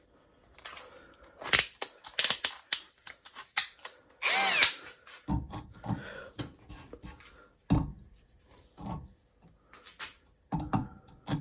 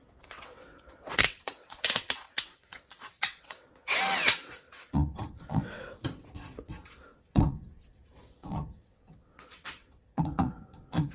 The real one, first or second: first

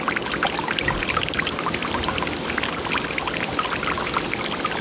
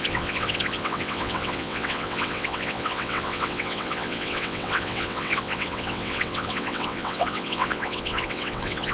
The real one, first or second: first